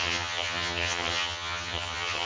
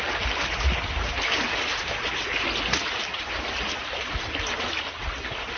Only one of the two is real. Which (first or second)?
second